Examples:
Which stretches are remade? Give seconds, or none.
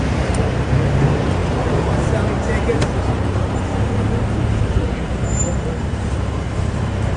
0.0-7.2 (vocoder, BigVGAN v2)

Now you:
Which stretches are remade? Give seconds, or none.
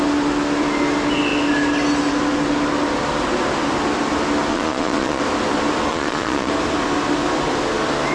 4.5-5.2 (vocoder, Vocos); 5.9-6.5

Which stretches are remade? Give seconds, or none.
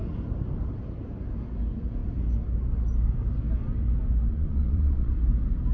4.3-5.1 (vocoder, Vocos)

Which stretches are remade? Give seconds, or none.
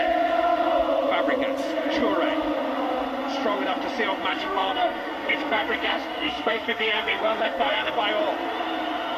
4.3-8.0 (codec, SNAC)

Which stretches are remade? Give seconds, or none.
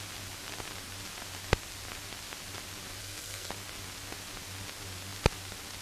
3.0-3.5 (codec, SNAC)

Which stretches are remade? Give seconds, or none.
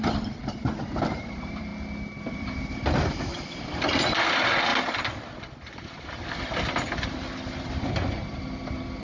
0.0-1.7 (vocoder, BigVGAN v2); 2.3-4.7; 7.7-9.0